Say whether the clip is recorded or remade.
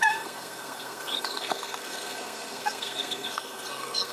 remade